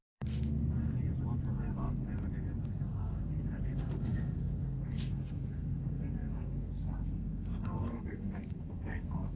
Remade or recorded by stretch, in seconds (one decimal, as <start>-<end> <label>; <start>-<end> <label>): 0.0-0.6 remade; 0.6-1.5 recorded; 1.5-2.1 remade; 2.1-2.8 recorded; 2.8-9.4 remade